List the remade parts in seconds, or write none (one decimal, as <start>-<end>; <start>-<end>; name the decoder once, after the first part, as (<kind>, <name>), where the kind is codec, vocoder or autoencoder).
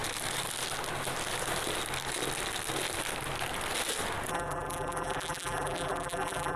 4.3-6.6 (vocoder, BigVGAN v2)